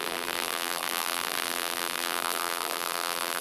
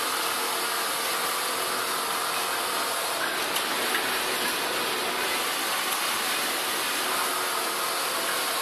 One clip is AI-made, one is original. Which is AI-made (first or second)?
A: first